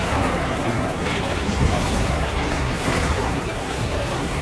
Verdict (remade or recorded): remade